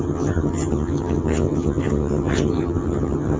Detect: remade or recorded remade